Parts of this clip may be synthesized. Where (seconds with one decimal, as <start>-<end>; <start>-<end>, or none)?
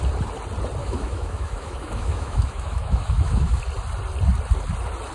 0.8-3.6